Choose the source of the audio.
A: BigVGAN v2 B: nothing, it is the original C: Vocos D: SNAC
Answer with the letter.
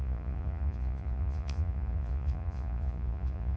C